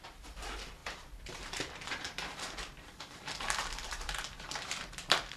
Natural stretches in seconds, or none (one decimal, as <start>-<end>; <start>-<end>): none